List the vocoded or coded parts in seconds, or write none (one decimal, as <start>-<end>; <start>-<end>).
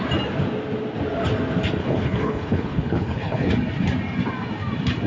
1.8-3.5